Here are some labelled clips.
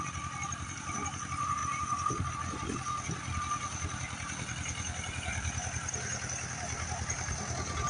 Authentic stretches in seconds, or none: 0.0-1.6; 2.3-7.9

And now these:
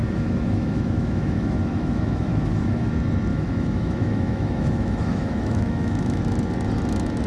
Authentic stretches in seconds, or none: 2.9-3.3; 6.2-7.3

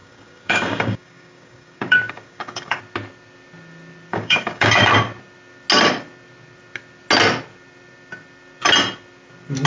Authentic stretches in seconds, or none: 2.8-4.1; 4.9-9.7

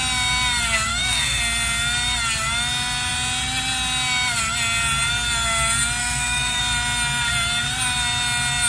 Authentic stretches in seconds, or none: 0.0-0.9; 1.4-6.0; 6.6-8.7

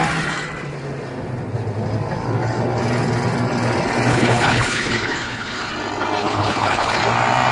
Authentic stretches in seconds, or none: 0.0-4.1; 5.7-6.2; 7.0-7.5